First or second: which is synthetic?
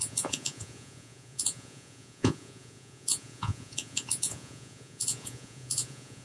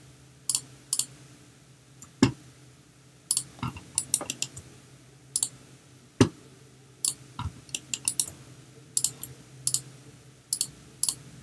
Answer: first